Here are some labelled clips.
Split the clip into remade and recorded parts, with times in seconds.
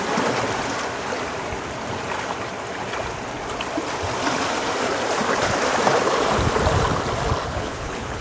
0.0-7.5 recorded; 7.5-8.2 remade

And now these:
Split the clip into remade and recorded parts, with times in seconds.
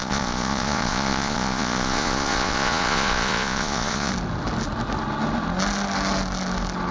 0.0-4.1 remade; 4.1-6.9 recorded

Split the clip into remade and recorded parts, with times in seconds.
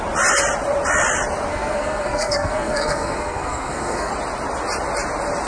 0.0-1.5 recorded; 1.5-4.1 remade; 4.1-5.5 recorded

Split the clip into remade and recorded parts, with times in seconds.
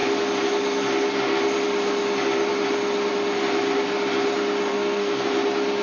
0.0-4.7 recorded; 4.7-5.3 remade; 5.3-5.8 recorded